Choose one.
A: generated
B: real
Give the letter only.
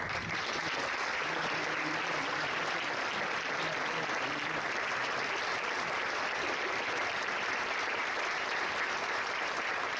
A